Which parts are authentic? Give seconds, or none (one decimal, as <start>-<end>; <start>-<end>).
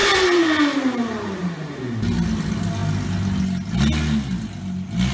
1.8-5.1